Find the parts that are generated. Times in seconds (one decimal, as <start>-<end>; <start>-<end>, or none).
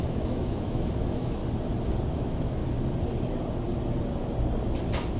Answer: 0.0-1.4; 2.1-2.6